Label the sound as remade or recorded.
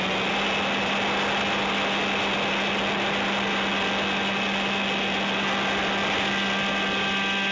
recorded